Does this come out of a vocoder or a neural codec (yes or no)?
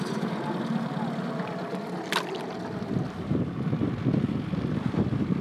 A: no